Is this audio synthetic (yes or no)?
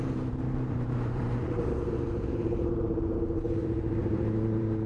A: yes